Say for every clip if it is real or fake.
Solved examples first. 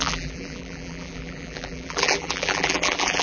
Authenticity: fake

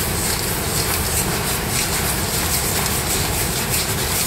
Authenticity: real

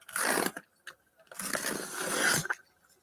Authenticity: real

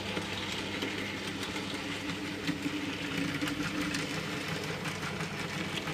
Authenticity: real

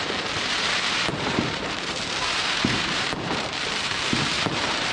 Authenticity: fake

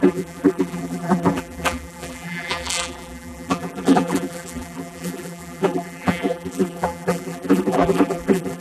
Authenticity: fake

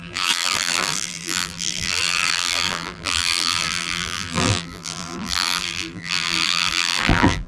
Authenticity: fake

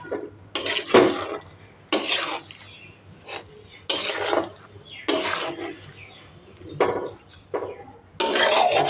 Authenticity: real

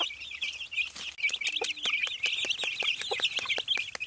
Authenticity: real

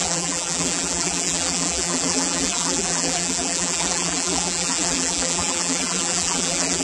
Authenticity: fake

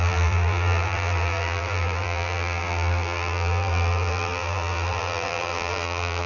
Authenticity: fake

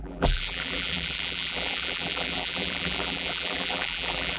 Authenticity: fake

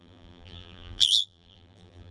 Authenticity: fake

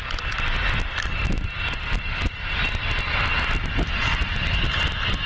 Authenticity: real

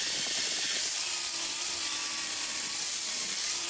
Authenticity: fake